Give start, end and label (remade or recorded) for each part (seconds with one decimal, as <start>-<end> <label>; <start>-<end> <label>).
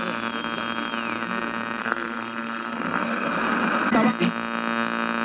0.0-1.8 recorded; 1.8-3.3 remade; 3.3-5.2 recorded